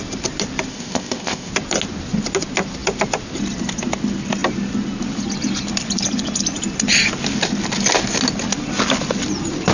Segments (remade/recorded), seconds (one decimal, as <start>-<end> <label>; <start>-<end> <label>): 0.0-0.7 recorded; 0.7-1.5 remade; 1.5-9.7 recorded